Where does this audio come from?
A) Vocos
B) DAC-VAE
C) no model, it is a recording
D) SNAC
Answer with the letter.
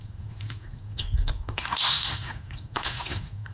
D